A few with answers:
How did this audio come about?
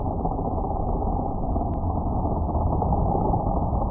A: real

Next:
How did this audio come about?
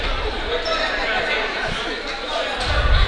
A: real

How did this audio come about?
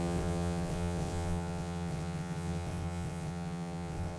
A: fake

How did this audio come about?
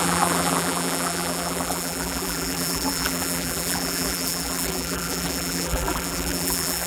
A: fake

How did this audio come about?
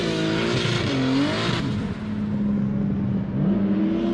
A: real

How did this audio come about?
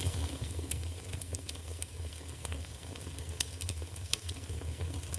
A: fake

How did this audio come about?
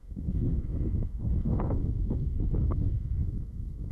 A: fake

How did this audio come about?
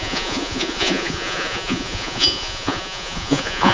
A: fake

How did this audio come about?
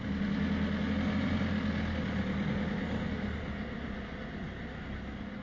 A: real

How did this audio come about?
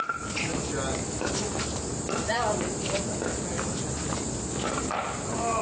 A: real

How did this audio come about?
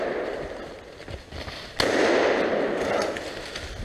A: real